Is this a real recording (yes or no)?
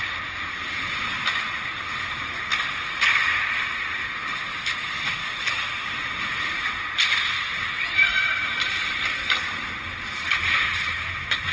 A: yes